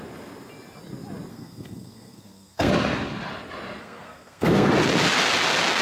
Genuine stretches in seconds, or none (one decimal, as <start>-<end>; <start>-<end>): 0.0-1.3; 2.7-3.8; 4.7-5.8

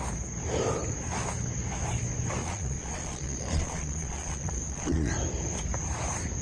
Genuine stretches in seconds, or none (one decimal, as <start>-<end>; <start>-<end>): 0.0-2.4; 5.1-6.4

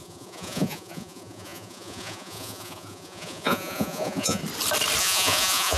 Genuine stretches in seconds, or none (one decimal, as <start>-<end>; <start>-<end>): 4.4-5.0